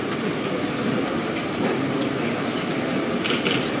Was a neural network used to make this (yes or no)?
no